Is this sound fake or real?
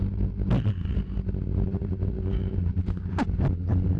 real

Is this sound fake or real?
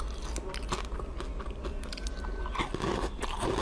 real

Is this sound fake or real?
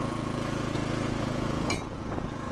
fake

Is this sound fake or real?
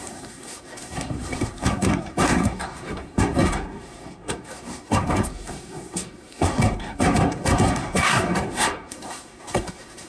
fake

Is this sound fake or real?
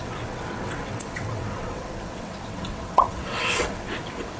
fake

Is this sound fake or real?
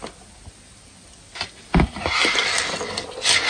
real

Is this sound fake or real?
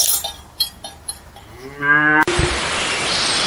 fake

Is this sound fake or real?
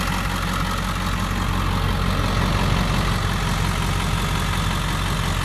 real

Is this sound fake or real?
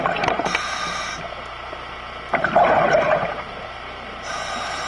fake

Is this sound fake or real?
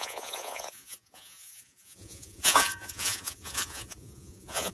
fake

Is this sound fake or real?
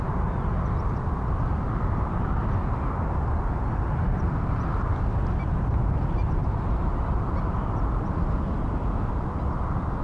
real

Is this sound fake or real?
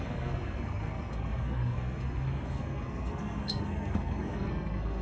fake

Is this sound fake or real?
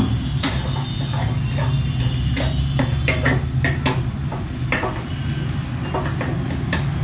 real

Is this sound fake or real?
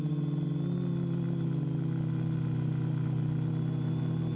real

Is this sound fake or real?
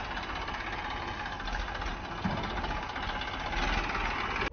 real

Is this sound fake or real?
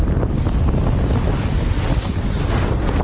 real